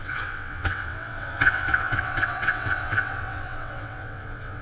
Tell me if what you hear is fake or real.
fake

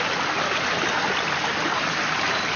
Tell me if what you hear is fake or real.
real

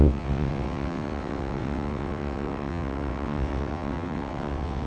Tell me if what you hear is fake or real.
fake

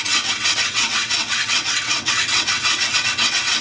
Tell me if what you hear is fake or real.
fake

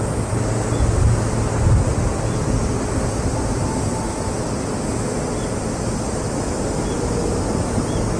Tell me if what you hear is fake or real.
real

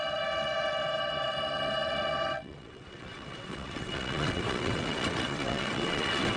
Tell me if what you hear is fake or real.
fake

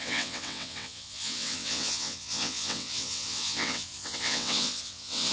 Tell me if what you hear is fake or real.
fake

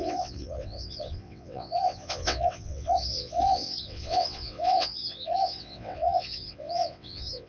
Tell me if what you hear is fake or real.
fake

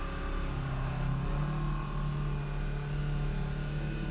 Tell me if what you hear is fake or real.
real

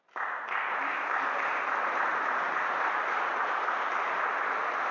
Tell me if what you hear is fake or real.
real